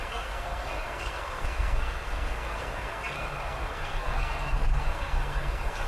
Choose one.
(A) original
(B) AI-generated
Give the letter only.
B